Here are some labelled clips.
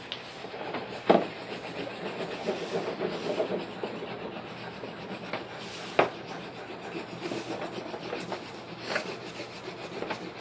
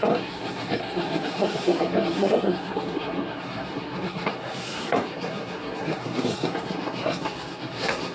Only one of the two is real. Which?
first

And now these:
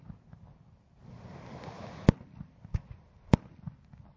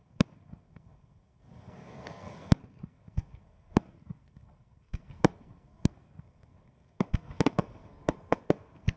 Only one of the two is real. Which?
first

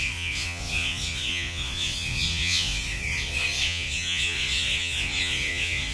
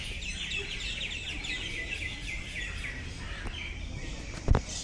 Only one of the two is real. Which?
second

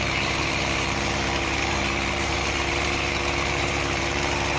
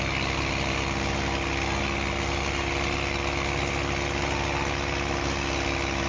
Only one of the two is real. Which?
second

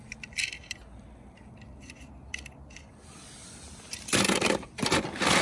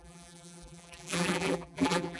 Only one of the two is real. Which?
first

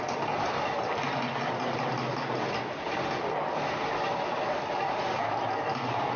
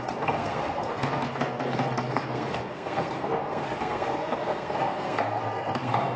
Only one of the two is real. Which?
first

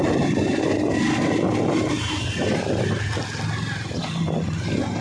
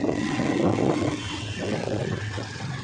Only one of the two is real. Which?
first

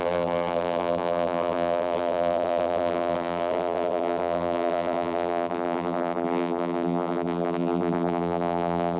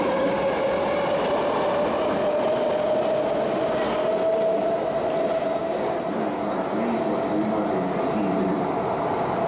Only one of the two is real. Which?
second